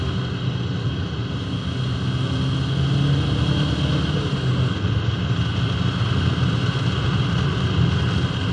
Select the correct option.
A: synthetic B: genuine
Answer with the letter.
B